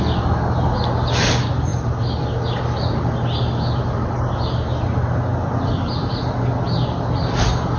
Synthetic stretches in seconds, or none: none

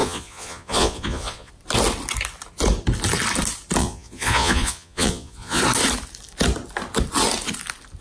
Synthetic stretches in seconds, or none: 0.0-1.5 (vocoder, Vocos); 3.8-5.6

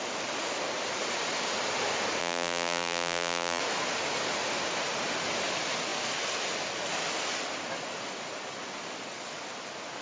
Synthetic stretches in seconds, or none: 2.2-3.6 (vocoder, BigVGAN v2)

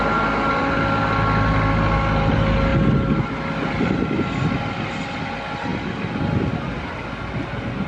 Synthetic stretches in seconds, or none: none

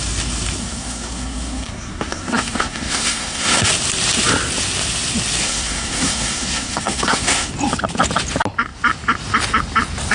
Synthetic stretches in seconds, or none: 0.6-3.7 (codec, SNAC); 5.4-7.5